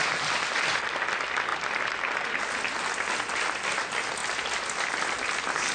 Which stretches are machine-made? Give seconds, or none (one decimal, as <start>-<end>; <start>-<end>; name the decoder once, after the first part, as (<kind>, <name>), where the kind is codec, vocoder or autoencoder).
none